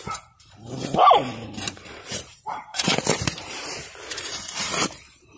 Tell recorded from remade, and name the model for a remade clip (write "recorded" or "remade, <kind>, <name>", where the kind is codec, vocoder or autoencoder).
remade, vocoder, BigVGAN v2